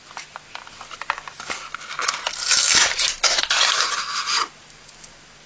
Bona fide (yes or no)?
yes